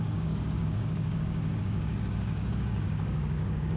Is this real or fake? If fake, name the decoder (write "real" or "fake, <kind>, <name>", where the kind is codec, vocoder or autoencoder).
fake, codec, DAC